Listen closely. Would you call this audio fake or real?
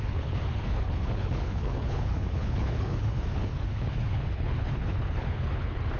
fake